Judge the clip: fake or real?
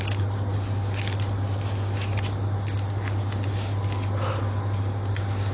real